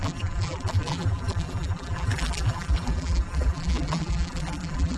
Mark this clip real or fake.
fake